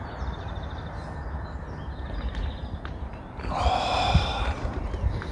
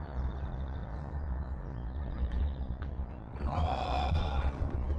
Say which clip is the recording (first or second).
first